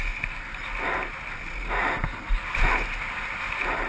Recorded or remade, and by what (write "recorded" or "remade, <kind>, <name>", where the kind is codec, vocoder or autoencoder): recorded